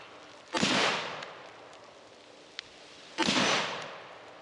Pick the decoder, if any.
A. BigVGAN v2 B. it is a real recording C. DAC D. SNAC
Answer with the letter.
B